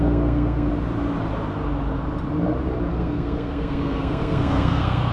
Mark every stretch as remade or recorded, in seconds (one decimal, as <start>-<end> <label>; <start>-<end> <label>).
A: 0.0-0.7 remade; 0.7-2.9 recorded; 2.9-5.1 remade